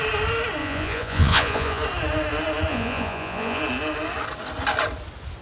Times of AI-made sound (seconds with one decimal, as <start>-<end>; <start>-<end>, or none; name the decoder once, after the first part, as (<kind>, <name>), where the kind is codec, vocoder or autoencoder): 0.6-1.8 (vocoder, Vocos); 2.7-3.6